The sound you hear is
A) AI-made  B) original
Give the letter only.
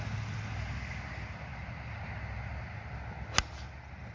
B